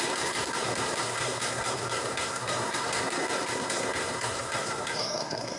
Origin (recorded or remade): remade